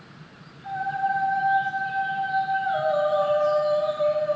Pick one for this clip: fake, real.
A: real